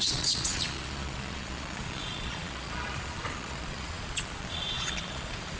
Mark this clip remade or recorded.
remade